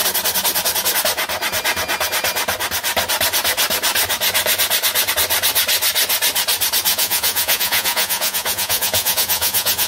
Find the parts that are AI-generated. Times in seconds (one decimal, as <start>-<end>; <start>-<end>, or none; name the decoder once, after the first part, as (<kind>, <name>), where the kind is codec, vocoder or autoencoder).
6.9-9.9 (vocoder, Vocos)